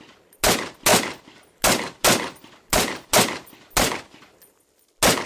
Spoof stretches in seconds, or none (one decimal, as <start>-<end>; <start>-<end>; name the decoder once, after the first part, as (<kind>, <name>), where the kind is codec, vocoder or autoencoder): none